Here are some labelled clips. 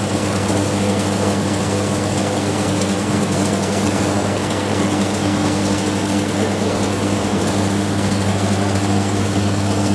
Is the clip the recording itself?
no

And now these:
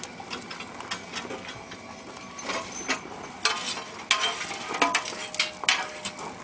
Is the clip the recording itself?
yes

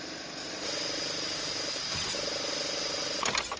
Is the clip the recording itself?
yes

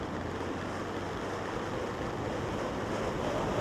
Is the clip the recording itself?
yes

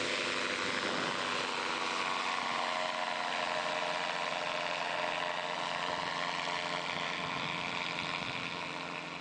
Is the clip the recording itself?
yes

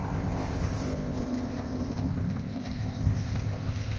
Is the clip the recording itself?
no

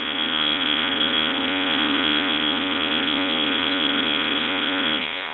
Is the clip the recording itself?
no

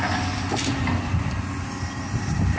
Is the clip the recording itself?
yes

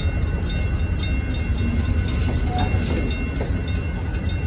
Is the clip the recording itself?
yes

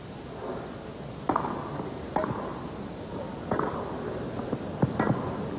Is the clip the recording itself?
yes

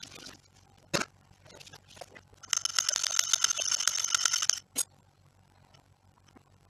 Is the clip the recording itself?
yes